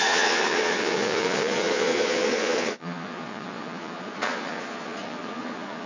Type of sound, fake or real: fake